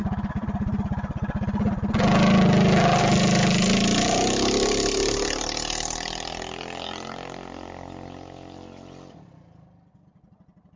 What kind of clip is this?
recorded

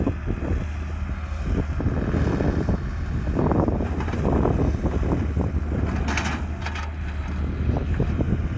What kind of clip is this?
recorded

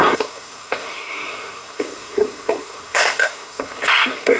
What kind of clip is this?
remade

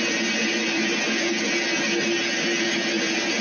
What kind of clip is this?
recorded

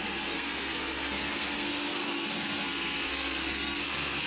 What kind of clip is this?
remade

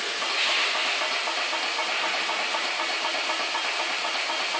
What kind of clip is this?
recorded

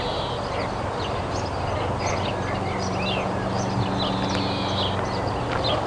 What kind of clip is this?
recorded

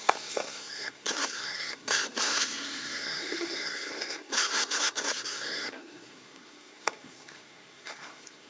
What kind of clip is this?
remade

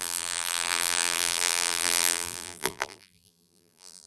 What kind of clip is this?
remade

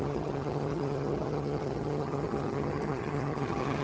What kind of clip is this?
remade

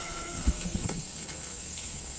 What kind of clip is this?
remade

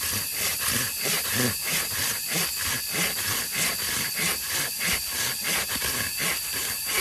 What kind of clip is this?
recorded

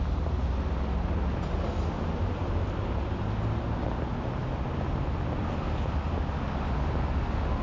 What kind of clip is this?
recorded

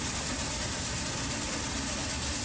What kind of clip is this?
recorded